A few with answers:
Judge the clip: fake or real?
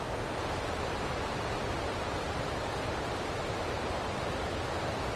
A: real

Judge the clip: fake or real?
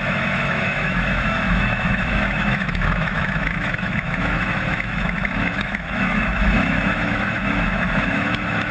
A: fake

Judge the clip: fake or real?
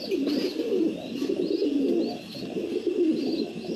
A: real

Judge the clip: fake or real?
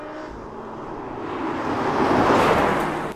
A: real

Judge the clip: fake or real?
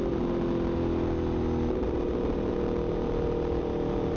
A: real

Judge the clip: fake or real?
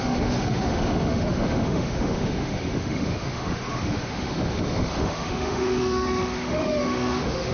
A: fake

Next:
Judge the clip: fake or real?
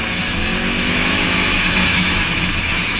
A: fake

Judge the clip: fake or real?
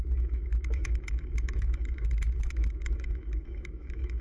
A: fake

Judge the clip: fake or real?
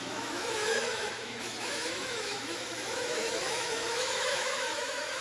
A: fake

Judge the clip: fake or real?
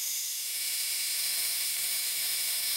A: fake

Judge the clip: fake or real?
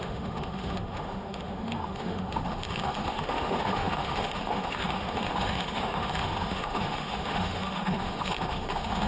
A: fake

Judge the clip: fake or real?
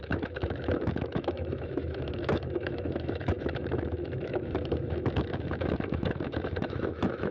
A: fake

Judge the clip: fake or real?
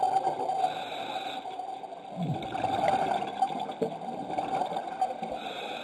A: real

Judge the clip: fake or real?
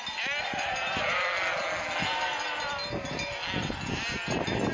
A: real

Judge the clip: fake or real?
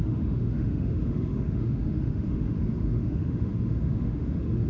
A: fake